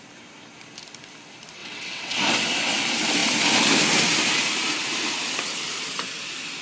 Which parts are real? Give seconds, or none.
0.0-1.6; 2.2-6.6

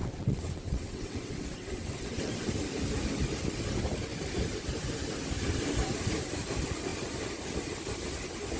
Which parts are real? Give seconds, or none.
2.5-8.6

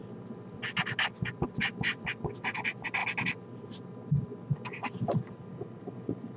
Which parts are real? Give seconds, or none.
0.0-6.4